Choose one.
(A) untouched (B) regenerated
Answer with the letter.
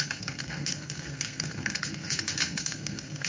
B